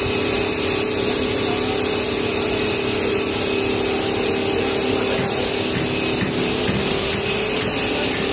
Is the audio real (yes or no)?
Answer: yes